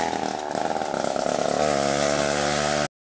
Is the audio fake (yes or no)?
no